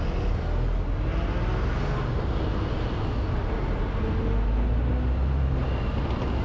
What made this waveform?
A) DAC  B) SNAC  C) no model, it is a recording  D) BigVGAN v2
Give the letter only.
C